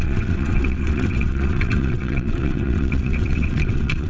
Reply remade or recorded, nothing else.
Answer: remade